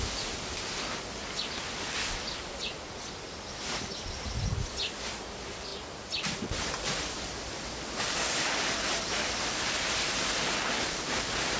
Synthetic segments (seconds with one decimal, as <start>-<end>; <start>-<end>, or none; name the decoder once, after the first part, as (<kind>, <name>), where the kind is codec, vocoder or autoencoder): none